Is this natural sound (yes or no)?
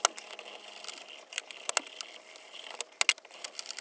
yes